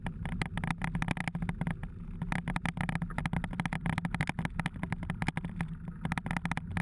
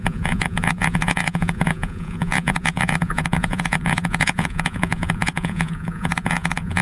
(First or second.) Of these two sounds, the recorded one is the first